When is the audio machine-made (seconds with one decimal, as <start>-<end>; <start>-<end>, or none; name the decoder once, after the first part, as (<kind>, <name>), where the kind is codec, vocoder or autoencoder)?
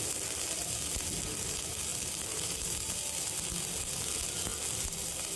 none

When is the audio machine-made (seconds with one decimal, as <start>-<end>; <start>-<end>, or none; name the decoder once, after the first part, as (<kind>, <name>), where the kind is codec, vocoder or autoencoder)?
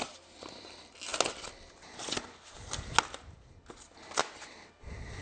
0.0-0.6 (vocoder, BigVGAN v2)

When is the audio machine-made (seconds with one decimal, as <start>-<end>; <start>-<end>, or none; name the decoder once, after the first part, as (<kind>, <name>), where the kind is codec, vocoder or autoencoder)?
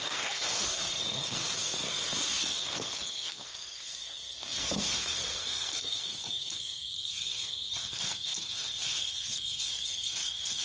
0.0-10.6 (codec, SNAC)